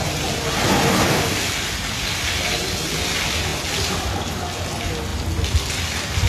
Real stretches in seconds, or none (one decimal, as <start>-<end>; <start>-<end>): 0.0-6.3